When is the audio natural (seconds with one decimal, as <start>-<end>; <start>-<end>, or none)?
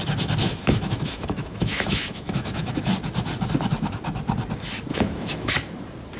0.0-0.4; 2.8-4.9; 5.5-6.2